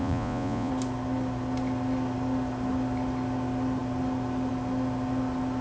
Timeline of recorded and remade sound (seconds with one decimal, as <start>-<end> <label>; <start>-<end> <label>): 0.0-0.7 remade; 0.7-5.6 recorded